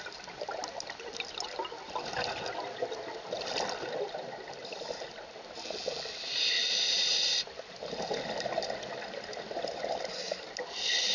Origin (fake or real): real